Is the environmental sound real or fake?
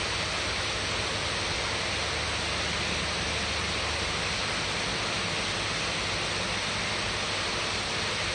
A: real